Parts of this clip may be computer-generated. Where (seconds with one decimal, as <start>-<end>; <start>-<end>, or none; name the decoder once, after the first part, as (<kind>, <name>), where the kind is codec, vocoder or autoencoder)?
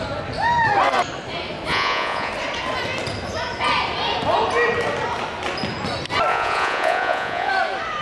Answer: 1.7-2.3 (vocoder, Vocos); 6.3-7.5